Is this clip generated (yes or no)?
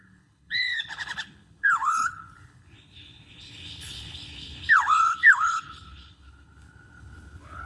yes